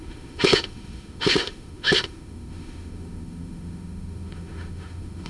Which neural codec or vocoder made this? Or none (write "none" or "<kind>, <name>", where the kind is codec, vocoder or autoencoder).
autoencoder, DAC-VAE